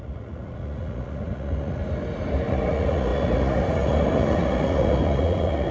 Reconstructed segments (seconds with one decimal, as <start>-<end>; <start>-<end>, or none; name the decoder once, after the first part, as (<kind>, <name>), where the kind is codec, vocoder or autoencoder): 0.0-1.8 (vocoder, Vocos); 2.5-5.7